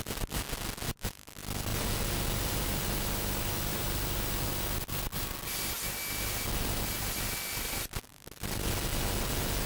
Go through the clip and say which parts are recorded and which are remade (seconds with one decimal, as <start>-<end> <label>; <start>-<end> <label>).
0.0-9.7 recorded